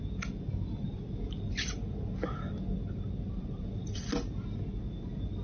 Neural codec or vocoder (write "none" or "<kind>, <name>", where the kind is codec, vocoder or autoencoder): none